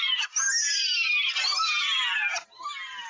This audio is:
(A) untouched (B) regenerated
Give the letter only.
A